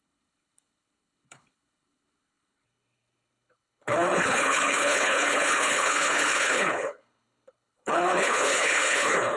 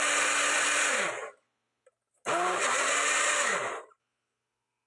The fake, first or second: first